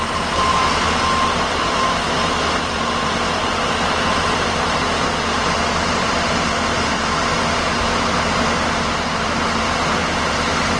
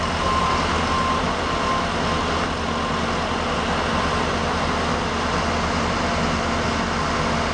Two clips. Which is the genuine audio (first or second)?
second